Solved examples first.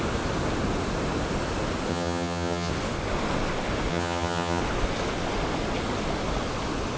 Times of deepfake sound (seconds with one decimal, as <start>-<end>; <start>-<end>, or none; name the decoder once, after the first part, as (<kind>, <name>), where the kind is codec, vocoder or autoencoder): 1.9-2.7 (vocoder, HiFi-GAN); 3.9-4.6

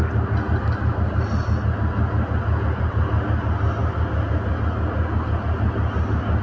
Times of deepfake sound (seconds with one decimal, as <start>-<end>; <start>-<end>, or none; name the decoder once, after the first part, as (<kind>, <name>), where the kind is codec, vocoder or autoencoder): none

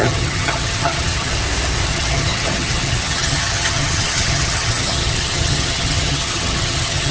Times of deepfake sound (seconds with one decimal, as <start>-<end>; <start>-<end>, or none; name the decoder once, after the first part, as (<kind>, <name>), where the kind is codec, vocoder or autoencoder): 0.0-1.3 (vocoder, HiFi-GAN); 1.9-7.1

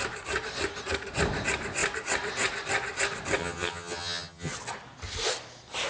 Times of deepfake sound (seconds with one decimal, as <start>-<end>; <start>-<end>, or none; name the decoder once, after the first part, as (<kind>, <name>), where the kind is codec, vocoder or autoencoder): 3.4-4.5 (vocoder, HiFi-GAN)

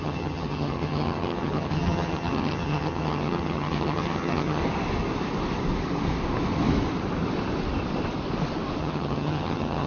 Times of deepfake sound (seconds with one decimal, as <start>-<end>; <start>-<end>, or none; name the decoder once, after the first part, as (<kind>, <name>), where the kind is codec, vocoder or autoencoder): 0.0-4.6 (vocoder, HiFi-GAN); 8.8-9.9

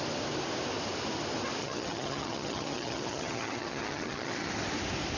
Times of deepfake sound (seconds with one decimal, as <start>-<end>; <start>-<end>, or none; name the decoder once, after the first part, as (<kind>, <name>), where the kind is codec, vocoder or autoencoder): 1.6-4.5 (vocoder, HiFi-GAN)

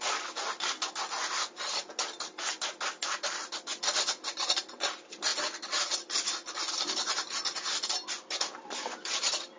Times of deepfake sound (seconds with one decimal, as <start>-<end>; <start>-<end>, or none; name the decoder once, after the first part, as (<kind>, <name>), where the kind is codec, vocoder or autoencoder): none